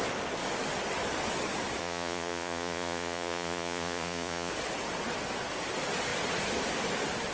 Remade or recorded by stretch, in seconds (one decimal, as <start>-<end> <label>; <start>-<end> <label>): 0.0-1.8 recorded; 1.8-4.5 remade; 4.5-7.3 recorded